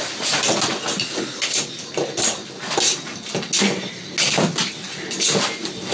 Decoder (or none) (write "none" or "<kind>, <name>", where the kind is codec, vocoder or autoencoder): none